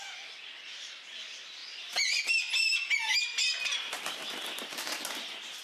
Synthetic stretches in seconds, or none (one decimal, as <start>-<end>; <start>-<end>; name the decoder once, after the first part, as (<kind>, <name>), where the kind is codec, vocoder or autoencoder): none